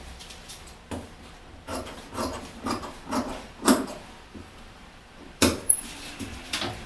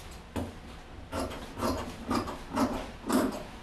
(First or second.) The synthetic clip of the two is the first